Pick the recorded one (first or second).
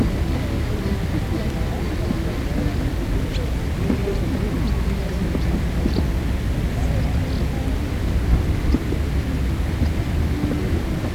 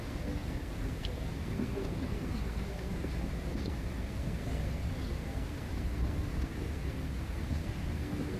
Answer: first